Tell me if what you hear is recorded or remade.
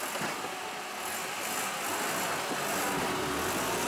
recorded